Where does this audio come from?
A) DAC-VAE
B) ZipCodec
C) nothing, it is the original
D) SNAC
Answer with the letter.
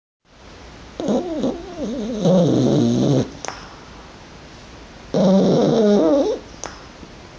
C